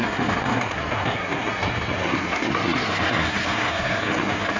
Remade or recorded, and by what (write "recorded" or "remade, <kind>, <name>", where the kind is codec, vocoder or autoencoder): remade, codec, SNAC